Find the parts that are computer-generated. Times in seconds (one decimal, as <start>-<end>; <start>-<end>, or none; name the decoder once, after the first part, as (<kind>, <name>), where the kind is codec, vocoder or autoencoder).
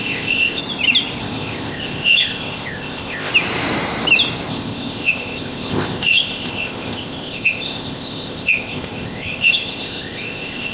0.0-0.6 (codec, ZipCodec); 1.2-3.3; 4.5-10.7